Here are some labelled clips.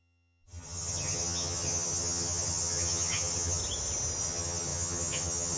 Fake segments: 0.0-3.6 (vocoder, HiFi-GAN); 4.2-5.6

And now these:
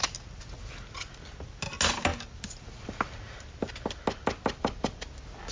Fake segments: none

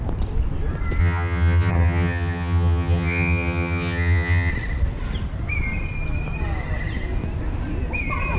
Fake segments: 1.0-4.5 (vocoder, HiFi-GAN)

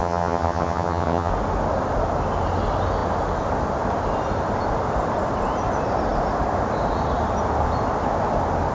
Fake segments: 0.0-1.3 (vocoder, HiFi-GAN)

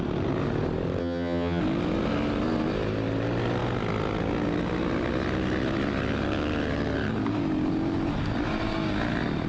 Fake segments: 1.0-1.6 (vocoder, HiFi-GAN)

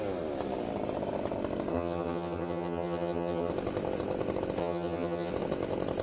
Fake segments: 1.7-3.5 (vocoder, HiFi-GAN); 4.6-5.3